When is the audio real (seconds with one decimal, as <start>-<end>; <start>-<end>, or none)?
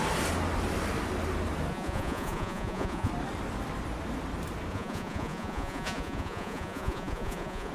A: 0.0-1.7; 3.1-4.7